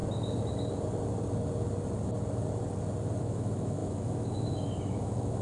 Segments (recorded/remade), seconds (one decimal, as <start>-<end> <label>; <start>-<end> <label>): 0.0-3.2 recorded; 3.2-5.4 remade